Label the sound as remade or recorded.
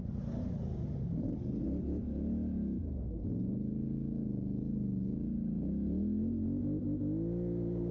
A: recorded